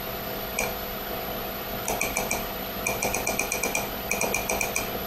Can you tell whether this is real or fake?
real